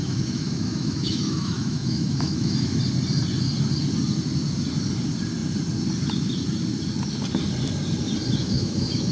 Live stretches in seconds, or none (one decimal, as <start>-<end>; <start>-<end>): 2.8-8.4